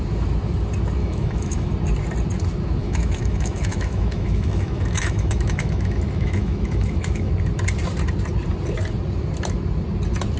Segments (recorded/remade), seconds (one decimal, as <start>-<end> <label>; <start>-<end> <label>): 0.0-1.0 recorded; 1.0-1.7 remade; 1.7-2.8 recorded; 2.8-7.3 remade; 7.3-10.4 recorded